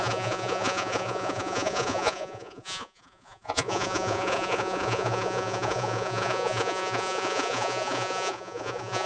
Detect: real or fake fake